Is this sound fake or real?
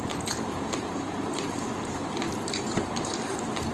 fake